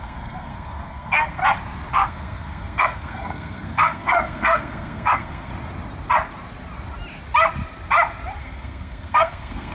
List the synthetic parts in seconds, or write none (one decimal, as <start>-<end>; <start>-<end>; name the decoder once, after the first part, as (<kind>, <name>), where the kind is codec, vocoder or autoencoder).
0.0-1.4 (codec, SNAC); 1.9-5.5; 8.4-9.7